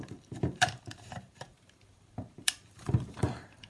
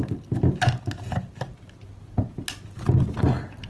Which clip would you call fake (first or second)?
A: first